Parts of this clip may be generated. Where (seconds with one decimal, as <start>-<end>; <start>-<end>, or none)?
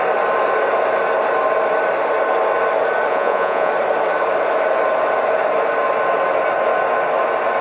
3.1-3.7